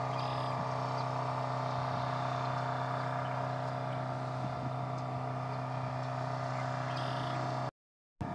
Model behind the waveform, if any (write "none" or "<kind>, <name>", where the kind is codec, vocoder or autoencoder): none